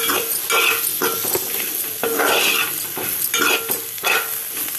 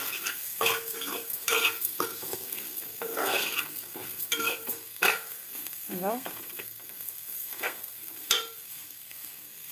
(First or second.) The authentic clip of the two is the first